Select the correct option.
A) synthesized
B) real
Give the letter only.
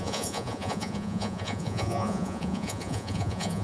A